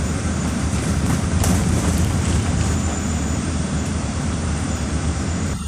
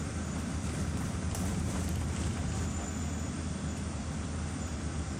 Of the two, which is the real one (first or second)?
second